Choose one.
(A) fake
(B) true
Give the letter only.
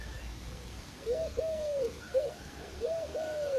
A